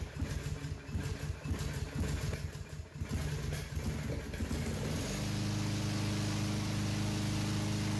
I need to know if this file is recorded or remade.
recorded